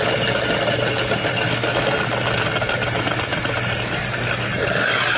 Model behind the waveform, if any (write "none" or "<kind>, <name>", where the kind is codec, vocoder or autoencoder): none